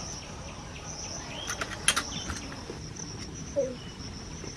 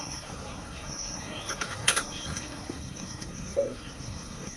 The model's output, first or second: second